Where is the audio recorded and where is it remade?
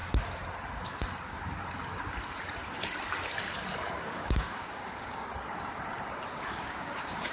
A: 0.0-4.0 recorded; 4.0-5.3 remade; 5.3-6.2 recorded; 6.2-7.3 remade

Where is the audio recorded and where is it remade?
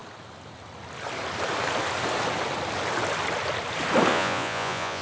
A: 0.0-4.1 recorded; 4.1-5.0 remade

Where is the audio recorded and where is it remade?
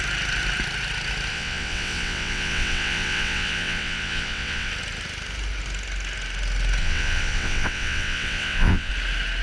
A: 0.0-1.3 recorded; 1.3-4.7 remade; 4.7-6.8 recorded; 6.8-8.9 remade; 8.9-9.4 recorded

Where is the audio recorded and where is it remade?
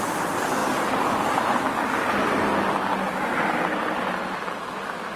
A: 0.0-5.2 recorded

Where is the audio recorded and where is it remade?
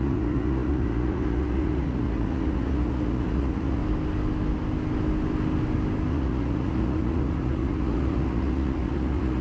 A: 0.0-3.8 remade; 3.8-6.1 recorded; 6.1-9.4 remade